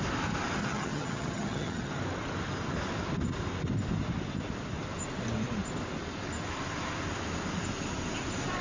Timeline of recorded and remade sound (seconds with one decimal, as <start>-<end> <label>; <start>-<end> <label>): 0.0-0.6 recorded; 0.6-1.9 remade; 1.9-8.6 recorded

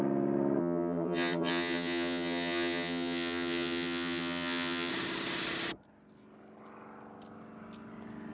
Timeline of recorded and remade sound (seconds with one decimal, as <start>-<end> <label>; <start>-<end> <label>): 0.0-0.6 recorded; 0.6-4.9 remade; 4.9-8.3 recorded

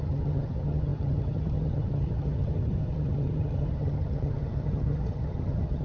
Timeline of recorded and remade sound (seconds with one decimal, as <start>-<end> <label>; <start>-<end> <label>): 0.0-5.8 remade

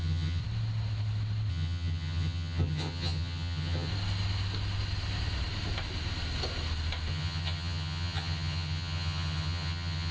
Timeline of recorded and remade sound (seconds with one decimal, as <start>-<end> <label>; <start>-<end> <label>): 0.0-0.4 remade; 0.4-1.5 recorded; 1.5-3.9 remade; 3.9-7.1 recorded; 7.1-10.1 remade

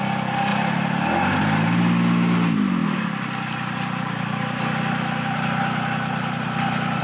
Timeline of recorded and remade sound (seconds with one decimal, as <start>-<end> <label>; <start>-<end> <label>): 0.0-7.0 recorded

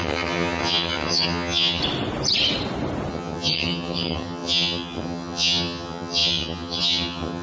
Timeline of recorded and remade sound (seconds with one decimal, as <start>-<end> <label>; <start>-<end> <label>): 0.0-1.8 remade; 1.8-3.1 recorded; 3.1-7.4 remade

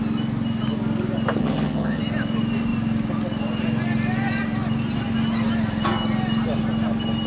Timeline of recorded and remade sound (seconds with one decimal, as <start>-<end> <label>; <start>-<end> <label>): 0.0-1.4 recorded; 1.4-2.0 remade; 2.0-7.3 recorded

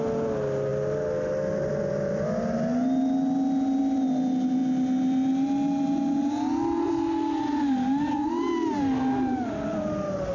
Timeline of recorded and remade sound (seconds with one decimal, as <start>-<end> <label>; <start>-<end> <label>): 0.0-10.3 recorded